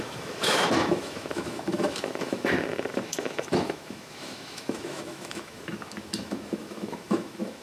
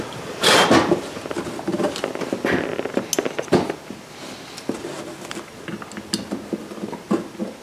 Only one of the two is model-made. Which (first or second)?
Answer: first